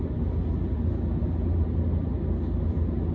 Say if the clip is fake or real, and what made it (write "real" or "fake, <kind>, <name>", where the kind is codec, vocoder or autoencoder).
real